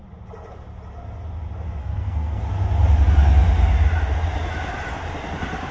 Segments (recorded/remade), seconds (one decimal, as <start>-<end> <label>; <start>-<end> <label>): 0.0-1.8 recorded; 1.8-2.4 remade; 2.4-5.7 recorded